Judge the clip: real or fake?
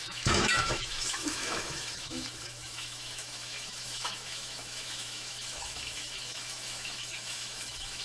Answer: fake